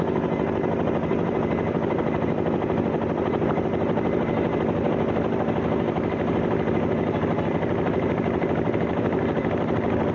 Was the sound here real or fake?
real